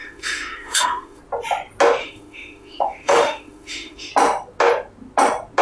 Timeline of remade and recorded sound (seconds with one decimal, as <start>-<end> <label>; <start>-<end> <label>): 0.0-1.2 remade; 1.2-2.0 recorded; 2.0-4.1 remade; 4.1-5.6 recorded